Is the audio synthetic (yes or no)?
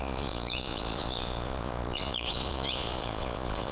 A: yes